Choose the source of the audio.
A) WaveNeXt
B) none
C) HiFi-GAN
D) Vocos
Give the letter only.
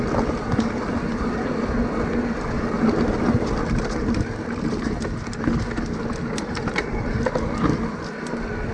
B